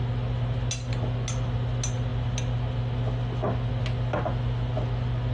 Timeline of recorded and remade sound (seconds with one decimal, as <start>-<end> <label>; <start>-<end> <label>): 0.0-5.3 recorded